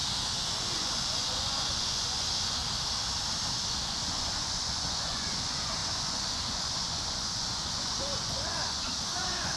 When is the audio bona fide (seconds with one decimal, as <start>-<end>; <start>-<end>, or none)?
0.0-0.5; 2.6-3.7